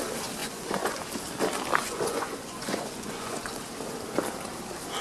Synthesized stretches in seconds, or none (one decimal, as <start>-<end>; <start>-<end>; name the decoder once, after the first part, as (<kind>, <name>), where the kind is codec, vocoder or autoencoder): 0.4-1.0 (vocoder, Vocos); 1.8-3.6